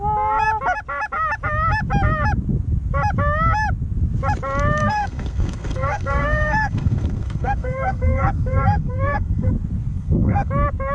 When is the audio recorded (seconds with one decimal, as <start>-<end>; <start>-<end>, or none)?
0.0-4.8; 9.5-9.9; 10.5-10.9